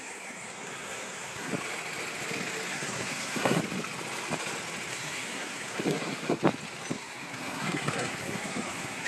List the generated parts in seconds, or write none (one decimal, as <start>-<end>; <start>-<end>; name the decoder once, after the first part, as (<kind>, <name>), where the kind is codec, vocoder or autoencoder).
0.0-1.5 (codec, SNAC); 2.7-3.6; 4.9-6.4; 6.9-9.1